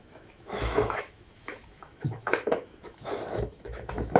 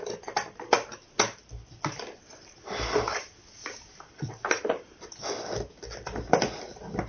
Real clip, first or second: second